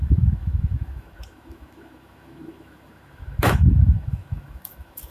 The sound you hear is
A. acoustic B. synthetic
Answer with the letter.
B